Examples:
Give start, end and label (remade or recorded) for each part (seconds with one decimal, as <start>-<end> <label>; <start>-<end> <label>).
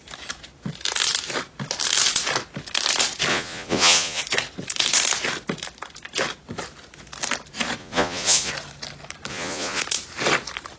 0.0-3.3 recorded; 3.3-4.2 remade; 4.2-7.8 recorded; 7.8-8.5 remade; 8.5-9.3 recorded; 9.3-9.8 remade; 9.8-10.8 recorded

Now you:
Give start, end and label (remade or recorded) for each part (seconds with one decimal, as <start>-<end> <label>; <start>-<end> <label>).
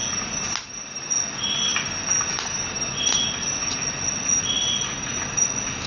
0.0-5.9 recorded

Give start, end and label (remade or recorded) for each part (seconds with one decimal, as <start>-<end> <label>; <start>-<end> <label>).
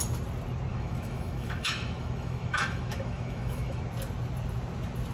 0.0-0.7 recorded; 0.7-3.8 remade; 3.8-5.1 recorded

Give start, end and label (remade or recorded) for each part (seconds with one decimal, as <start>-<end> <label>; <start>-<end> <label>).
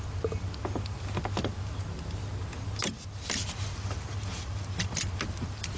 0.0-5.8 recorded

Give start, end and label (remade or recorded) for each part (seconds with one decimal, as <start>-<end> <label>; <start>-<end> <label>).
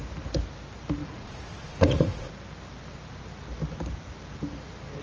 0.0-1.0 recorded; 1.0-2.3 remade; 2.3-5.0 recorded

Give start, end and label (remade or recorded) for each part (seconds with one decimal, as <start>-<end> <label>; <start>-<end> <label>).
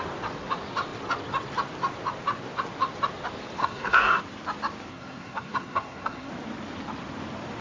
0.0-3.6 recorded; 3.6-4.2 remade; 4.2-4.9 recorded; 4.9-6.3 remade; 6.3-7.6 recorded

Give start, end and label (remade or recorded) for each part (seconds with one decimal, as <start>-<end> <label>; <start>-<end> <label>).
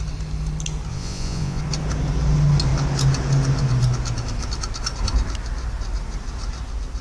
0.0-0.9 recorded; 0.9-1.6 remade; 1.6-7.0 recorded